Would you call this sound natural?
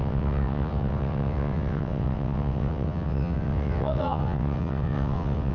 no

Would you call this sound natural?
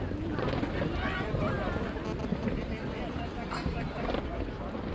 yes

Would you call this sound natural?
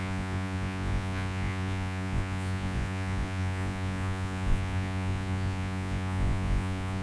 no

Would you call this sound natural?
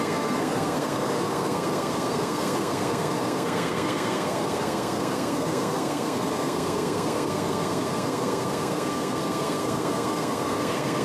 no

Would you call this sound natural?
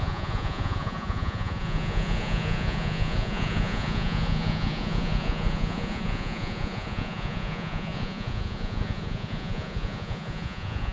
no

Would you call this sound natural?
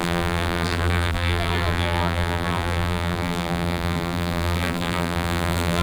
no